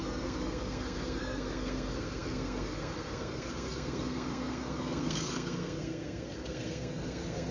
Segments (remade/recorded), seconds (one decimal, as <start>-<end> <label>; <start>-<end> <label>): 0.0-7.5 remade